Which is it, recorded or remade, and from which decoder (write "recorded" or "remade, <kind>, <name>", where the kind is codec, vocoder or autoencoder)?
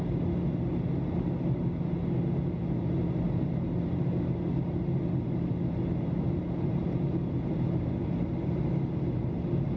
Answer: recorded